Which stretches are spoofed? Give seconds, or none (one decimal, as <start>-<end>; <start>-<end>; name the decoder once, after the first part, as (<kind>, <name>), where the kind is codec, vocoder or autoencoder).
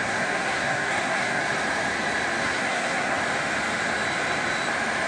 0.0-1.4 (codec, SNAC); 2.4-3.2